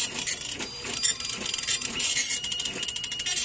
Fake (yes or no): no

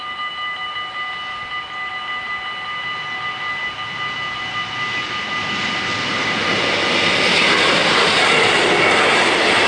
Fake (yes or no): no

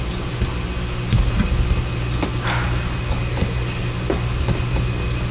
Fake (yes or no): no